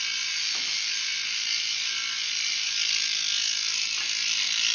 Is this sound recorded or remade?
recorded